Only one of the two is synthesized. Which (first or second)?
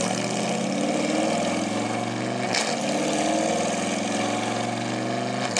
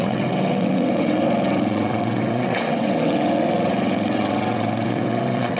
second